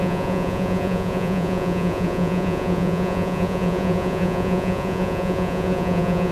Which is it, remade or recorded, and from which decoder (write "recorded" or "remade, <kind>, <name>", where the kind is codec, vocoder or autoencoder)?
remade, vocoder, Vocos